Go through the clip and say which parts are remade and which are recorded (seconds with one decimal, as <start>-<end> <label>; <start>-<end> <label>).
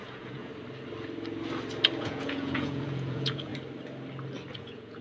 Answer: 0.0-0.5 remade; 0.5-2.0 recorded; 2.0-3.5 remade; 3.5-4.6 recorded; 4.6-5.0 remade